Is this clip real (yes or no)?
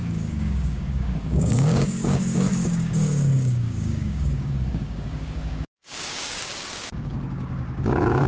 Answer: no